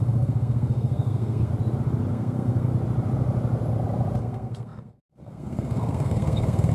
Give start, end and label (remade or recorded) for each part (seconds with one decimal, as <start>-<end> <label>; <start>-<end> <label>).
0.0-1.5 remade; 1.5-2.1 recorded; 2.1-2.7 remade; 2.7-4.2 recorded; 4.2-6.7 remade